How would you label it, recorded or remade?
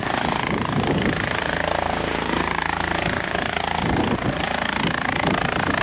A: remade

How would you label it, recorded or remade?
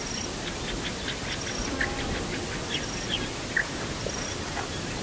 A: recorded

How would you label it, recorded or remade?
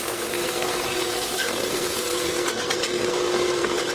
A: remade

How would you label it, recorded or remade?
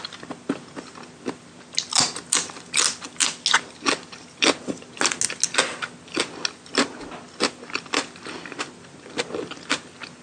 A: recorded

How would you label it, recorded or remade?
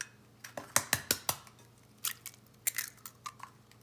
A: recorded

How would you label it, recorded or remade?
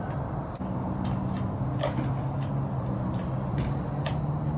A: recorded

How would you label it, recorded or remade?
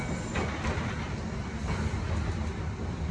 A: recorded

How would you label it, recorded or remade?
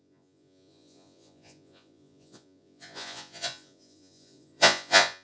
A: remade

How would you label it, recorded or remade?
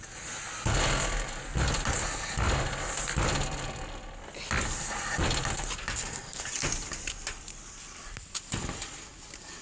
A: recorded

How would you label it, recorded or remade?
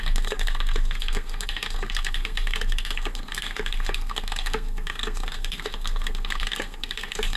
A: remade